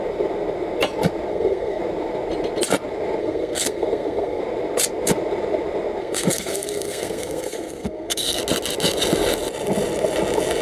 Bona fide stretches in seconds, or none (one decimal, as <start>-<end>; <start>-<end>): 0.0-1.3; 1.8-3.2; 4.4-6.0; 8.4-10.6